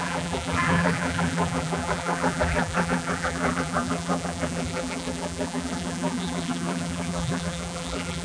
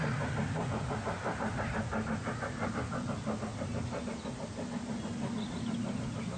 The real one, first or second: second